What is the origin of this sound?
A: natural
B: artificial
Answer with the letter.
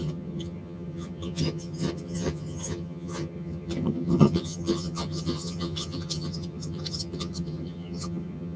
B